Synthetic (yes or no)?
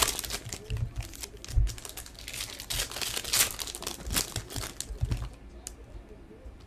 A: no